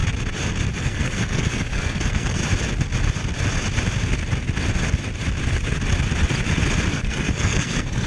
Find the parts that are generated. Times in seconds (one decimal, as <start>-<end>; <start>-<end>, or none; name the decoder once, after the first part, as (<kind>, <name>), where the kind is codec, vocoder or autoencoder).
0.8-2.4 (codec, SNAC); 6.9-8.1

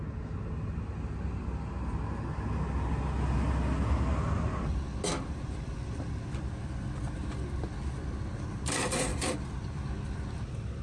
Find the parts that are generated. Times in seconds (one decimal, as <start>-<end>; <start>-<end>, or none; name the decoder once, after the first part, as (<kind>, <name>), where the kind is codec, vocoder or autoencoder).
none

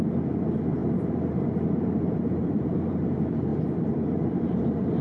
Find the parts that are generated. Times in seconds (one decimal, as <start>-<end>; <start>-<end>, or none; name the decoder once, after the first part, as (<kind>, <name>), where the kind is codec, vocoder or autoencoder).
0.8-3.0 (vocoder, BigVGAN v2)

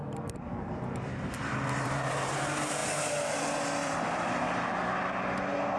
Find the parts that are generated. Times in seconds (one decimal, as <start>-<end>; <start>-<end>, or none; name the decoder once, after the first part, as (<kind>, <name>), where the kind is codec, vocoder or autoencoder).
0.0-2.3 (vocoder, BigVGAN v2); 3.8-4.7